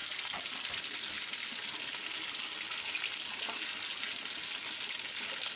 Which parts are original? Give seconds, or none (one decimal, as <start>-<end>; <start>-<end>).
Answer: 0.0-5.6